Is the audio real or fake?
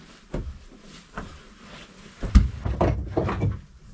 real